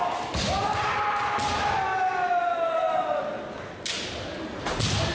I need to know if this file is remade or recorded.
recorded